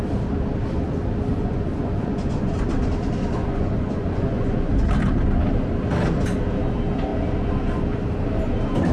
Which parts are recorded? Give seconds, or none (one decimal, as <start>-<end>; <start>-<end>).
0.0-1.3; 2.5-3.4; 4.7-8.9

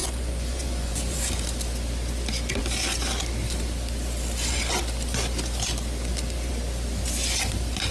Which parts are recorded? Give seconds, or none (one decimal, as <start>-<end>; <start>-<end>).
1.2-7.9

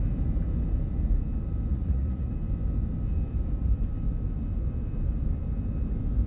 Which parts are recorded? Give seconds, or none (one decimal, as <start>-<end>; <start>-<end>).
0.0-1.7; 2.3-6.3

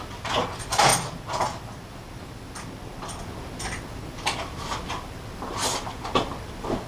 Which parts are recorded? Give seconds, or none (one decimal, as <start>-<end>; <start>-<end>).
0.0-6.9